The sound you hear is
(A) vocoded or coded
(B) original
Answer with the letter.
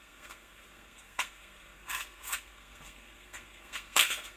A